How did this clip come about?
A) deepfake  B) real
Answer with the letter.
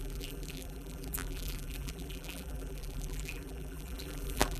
A